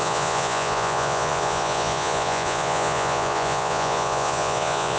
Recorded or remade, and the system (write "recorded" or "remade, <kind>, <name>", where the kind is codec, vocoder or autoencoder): remade, vocoder, Vocos